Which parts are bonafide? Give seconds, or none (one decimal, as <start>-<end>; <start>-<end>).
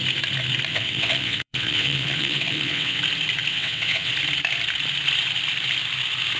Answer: 0.0-0.7; 3.0-3.5; 4.1-6.4